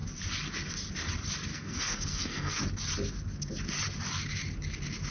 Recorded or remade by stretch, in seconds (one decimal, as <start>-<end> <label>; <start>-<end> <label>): 0.0-1.5 recorded; 1.5-2.6 remade; 2.6-5.1 recorded